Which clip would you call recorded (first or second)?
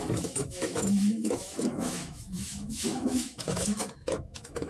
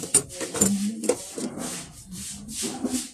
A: second